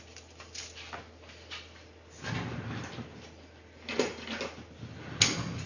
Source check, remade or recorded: recorded